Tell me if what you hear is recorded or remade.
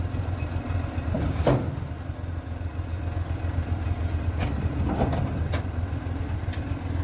recorded